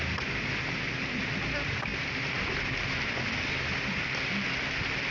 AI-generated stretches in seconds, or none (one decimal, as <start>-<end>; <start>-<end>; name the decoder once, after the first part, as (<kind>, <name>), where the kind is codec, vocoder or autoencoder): none